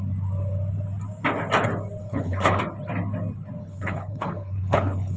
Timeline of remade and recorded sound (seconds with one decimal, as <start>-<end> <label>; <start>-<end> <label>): 0.0-2.0 recorded; 2.0-2.6 remade; 2.6-3.6 recorded; 3.6-5.2 remade